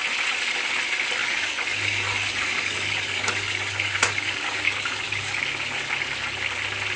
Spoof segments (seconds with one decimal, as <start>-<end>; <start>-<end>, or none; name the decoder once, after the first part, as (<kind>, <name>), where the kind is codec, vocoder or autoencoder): 1.2-5.4 (codec, DAC)